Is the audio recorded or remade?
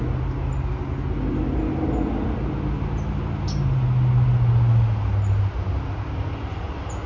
recorded